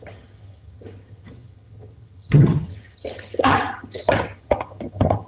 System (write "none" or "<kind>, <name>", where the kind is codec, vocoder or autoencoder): vocoder, HiFi-GAN